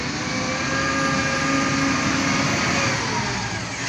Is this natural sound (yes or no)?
yes